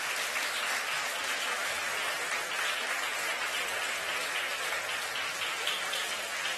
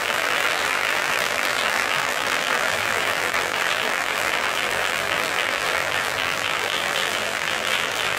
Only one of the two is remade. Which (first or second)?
second